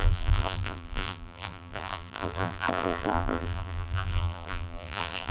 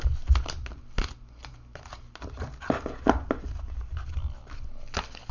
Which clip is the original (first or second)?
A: second